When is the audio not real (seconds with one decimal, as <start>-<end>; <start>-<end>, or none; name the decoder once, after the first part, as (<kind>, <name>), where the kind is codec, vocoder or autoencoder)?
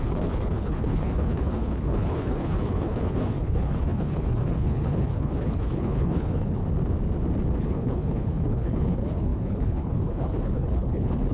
0.0-6.6 (codec, HILCodec); 7.6-11.3